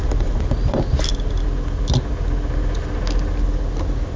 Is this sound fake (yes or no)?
no